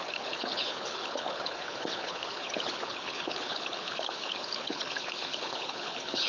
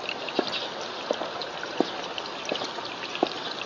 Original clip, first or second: second